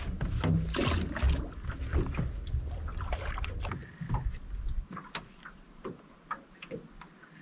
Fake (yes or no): no